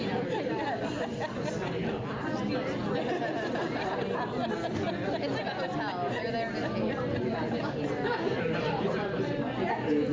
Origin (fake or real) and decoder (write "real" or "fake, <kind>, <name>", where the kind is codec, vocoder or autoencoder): real